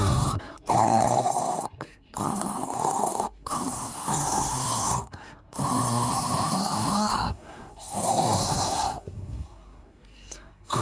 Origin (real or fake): fake